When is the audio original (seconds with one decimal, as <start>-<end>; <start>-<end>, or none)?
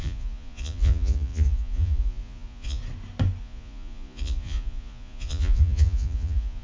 2.8-3.4